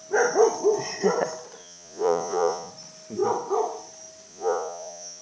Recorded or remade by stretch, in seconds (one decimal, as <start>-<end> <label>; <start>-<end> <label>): 0.0-1.6 recorded; 1.6-2.7 remade; 2.7-4.3 recorded; 4.3-5.2 remade